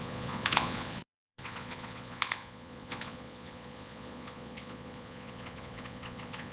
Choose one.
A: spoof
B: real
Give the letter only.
A